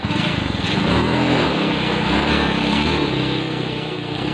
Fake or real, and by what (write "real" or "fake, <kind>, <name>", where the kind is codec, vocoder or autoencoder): fake, codec, SNAC